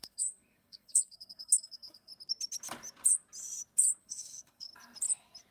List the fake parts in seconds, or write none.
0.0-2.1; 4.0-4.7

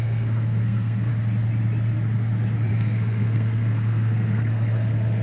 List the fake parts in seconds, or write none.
0.0-1.1; 2.7-5.2

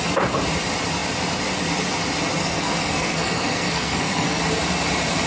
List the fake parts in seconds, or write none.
2.4-4.4

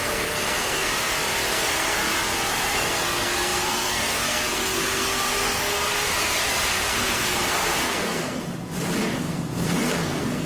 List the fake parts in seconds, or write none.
0.0-0.9; 1.5-2.0; 2.5-8.5; 9.2-10.5

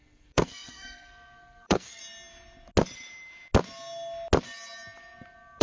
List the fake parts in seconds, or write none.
0.0-2.0

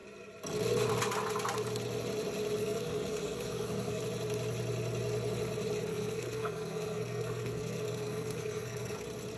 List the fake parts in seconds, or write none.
2.6-4.0; 5.9-9.0

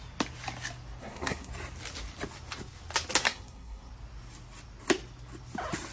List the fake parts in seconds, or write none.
1.0-1.5; 3.2-3.9